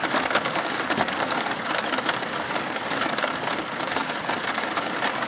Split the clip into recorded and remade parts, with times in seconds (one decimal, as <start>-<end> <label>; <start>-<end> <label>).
0.0-5.3 remade